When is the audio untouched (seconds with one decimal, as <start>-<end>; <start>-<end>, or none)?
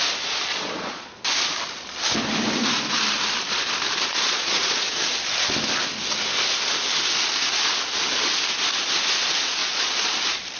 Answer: 0.0-0.5; 1.1-4.1; 5.0-9.6; 10.1-10.6